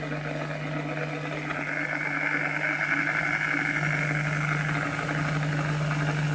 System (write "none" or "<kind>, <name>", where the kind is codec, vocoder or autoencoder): none